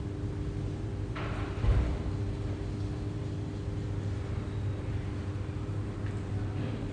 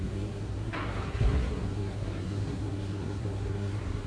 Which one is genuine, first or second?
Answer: first